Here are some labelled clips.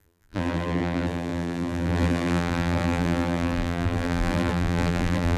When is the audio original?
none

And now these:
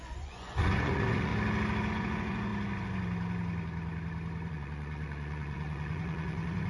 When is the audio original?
1.3-1.9; 2.5-4.5

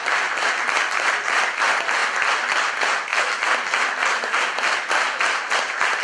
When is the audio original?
0.0-6.0

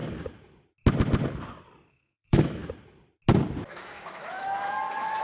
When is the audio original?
0.0-1.9; 2.6-3.7

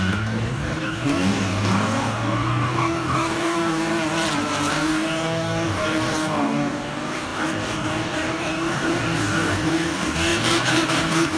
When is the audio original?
3.9-4.7

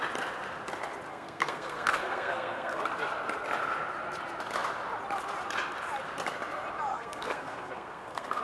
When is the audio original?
0.0-1.1; 2.8-6.9

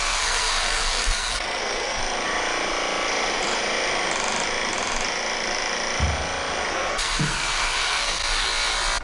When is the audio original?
2.0-6.7; 8.2-9.0